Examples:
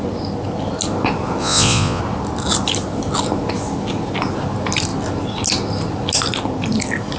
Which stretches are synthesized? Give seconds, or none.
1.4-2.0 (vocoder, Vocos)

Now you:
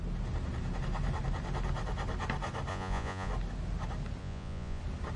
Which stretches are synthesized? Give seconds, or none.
2.7-3.3 (vocoder, Vocos); 4.2-4.8

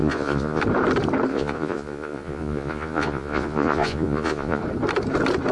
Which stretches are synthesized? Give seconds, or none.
0.0-0.6 (vocoder, Vocos); 1.3-4.6